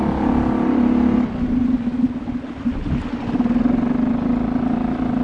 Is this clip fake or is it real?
real